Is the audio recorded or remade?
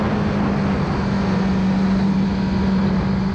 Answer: recorded